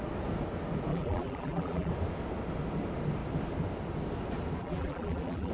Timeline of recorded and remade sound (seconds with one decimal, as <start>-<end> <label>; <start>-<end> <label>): 0.0-0.9 recorded; 0.9-1.9 remade; 1.9-4.6 recorded; 4.6-5.5 remade